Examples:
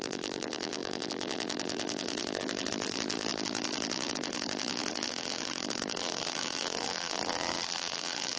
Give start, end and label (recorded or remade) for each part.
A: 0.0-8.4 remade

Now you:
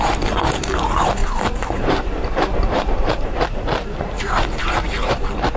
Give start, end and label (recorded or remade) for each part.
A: 0.0-1.2 recorded; 1.2-4.6 remade; 4.6-5.6 recorded